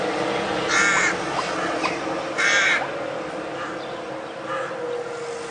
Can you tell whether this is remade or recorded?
recorded